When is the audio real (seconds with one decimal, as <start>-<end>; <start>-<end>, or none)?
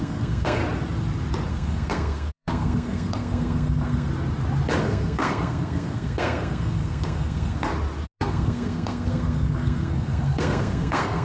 0.6-1.5; 4.1-4.8; 7.7-8.2